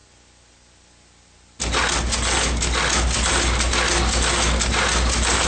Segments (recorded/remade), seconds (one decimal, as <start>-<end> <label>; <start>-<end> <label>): 0.0-5.5 recorded